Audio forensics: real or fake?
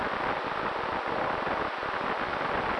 real